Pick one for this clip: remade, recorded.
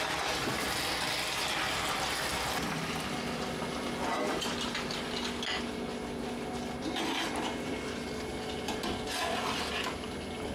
recorded